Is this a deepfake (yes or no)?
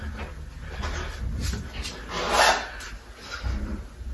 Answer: no